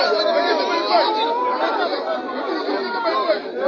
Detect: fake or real real